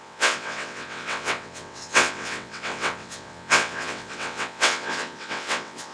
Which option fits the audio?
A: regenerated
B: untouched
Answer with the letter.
A